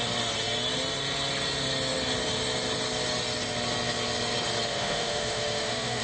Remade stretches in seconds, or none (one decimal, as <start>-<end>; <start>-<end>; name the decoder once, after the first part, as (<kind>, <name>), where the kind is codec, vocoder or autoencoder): 4.7-6.0 (autoencoder, DAC-VAE)